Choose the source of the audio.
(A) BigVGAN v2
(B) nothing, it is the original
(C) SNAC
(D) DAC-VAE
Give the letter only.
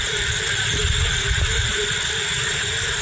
A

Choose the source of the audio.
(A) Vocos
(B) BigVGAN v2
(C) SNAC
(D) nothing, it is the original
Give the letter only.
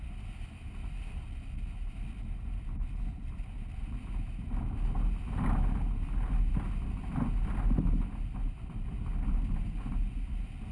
D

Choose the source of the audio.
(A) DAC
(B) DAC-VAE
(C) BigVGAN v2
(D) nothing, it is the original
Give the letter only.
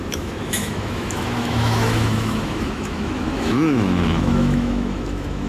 B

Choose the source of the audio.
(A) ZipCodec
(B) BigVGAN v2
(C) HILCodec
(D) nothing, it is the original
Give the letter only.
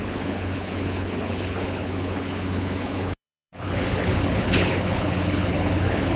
C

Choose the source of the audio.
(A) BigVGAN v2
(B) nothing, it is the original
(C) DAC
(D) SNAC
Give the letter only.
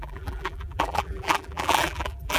A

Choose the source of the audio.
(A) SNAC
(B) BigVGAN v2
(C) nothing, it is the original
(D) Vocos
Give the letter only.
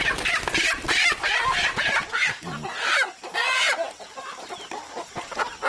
C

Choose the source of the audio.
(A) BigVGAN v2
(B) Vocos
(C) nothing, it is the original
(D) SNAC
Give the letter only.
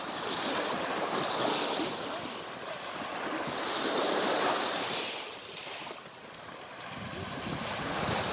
C